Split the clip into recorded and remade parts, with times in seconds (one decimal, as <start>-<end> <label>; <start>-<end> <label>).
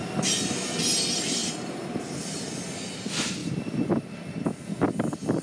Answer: 0.0-1.4 recorded; 1.4-2.0 remade; 2.0-3.4 recorded; 3.4-4.0 remade; 4.0-5.4 recorded